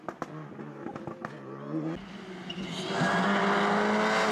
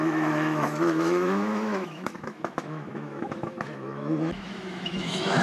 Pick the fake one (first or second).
second